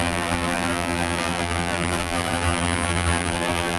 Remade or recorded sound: remade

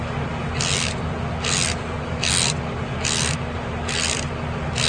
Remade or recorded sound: recorded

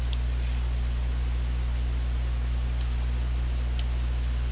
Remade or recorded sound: recorded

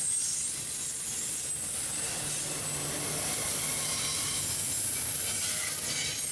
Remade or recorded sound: recorded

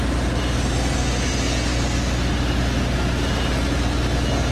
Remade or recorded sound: recorded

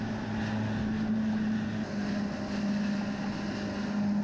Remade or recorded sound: recorded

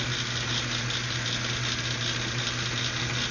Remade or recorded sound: recorded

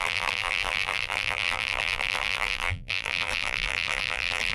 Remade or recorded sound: remade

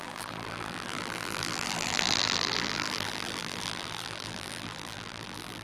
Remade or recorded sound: remade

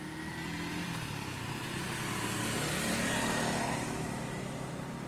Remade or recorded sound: recorded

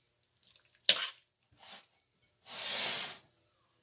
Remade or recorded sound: recorded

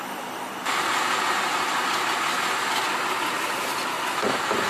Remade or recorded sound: recorded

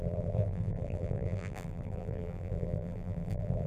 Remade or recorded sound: remade